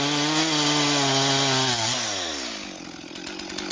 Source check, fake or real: real